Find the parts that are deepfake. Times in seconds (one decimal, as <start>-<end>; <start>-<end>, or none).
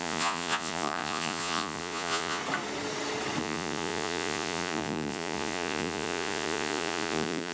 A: 0.0-2.4; 3.4-7.5